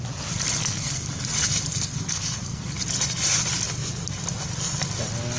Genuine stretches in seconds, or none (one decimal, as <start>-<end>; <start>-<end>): 0.0-0.6; 1.1-1.7; 2.6-5.4